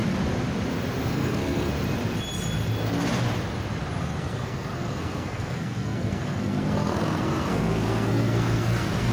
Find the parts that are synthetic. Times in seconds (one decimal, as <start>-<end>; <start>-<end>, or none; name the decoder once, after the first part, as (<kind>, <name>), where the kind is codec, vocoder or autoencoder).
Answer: 1.1-1.7 (codec, SNAC); 4.0-9.1